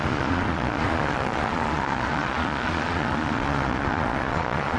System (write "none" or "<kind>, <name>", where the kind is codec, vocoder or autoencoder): vocoder, Vocos